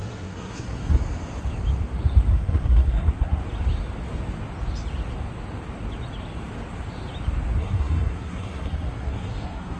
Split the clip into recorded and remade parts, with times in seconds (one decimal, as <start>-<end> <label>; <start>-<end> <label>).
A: 0.0-1.0 remade; 1.0-2.3 recorded; 2.3-3.4 remade; 3.4-7.6 recorded; 7.6-9.8 remade